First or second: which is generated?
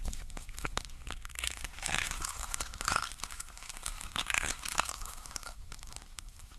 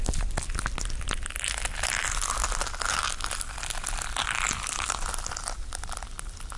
first